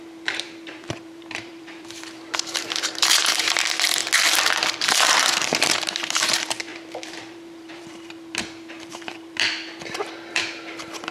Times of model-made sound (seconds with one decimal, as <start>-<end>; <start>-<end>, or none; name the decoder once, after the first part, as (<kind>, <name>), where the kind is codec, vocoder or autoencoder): 0.0-4.0 (vocoder, BigVGAN v2); 4.7-11.1